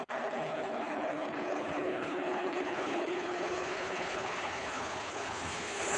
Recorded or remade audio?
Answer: remade